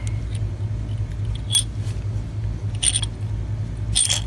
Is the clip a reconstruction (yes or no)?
no